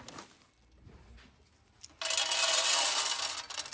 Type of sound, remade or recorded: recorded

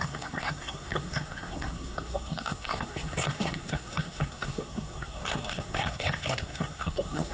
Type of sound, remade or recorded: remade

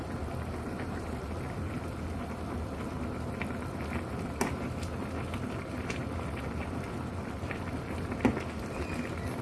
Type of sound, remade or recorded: recorded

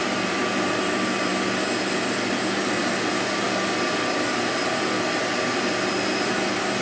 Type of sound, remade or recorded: remade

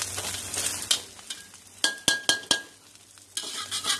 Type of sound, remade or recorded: recorded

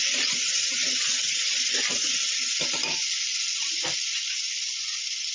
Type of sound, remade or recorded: recorded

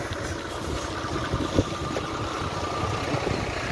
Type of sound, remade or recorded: recorded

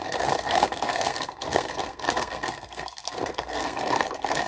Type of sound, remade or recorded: remade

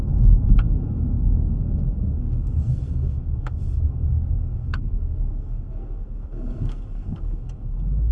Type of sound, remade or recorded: remade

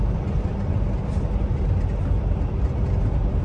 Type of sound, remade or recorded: recorded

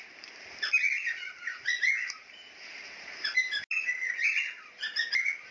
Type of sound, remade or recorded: recorded